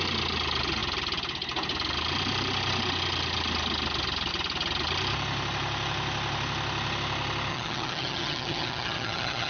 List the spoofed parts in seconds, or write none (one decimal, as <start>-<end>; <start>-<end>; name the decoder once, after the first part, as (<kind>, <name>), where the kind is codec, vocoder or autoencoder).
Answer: 7.5-9.5 (vocoder, HiFi-GAN)